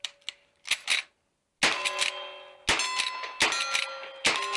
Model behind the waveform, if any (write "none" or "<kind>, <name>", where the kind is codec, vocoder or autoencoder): none